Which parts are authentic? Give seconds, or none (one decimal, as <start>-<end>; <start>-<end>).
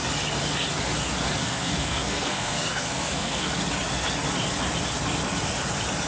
0.0-1.4; 3.5-6.1